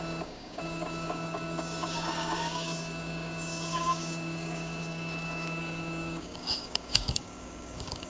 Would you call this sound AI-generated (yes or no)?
yes